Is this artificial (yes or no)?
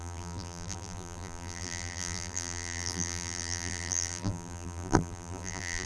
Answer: yes